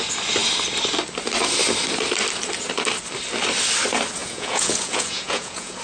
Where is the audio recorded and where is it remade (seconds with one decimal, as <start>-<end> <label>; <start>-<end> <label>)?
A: 0.0-4.2 recorded; 4.2-5.8 remade